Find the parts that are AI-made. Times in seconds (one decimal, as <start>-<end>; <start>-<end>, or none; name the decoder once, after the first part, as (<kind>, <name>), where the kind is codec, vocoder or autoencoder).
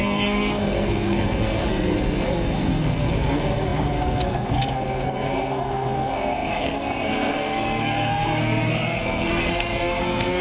0.0-10.4 (codec, SNAC)